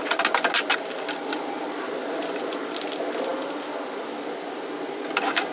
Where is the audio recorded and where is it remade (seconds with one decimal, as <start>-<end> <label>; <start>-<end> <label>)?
0.0-5.5 recorded